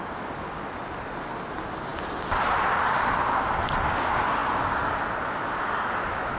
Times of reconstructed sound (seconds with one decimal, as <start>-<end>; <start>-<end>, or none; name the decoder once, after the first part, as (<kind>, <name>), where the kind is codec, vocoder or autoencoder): none